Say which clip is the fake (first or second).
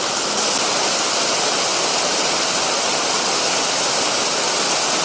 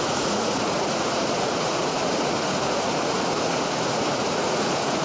second